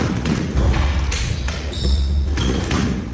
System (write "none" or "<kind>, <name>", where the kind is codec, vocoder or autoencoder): vocoder, Vocos